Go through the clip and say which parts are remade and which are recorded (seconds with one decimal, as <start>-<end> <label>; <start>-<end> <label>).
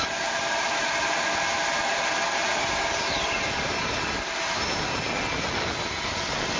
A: 0.0-6.6 recorded